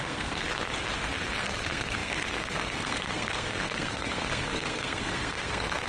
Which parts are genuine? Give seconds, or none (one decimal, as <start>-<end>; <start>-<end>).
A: 0.7-1.4